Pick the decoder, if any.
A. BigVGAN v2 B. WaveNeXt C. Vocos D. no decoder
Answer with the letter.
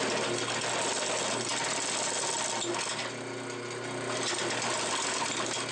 D